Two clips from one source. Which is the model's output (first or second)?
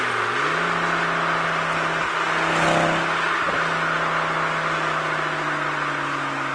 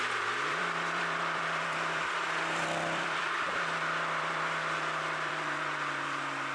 second